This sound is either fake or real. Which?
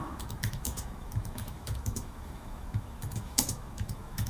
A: fake